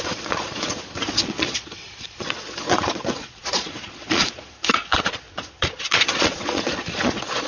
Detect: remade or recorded remade